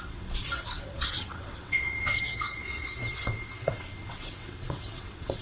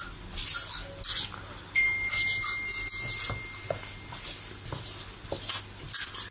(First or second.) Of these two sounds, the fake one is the first